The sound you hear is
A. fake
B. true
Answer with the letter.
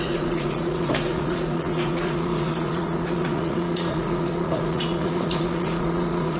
A